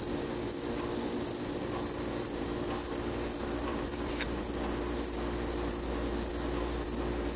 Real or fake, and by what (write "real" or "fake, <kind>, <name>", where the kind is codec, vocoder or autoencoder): real